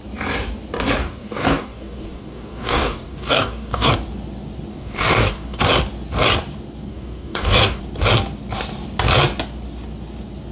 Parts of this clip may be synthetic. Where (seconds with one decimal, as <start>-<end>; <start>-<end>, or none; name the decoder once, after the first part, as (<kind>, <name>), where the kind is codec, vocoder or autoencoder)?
1.0-3.9 (codec, DAC); 4.7-5.6; 6.9-7.8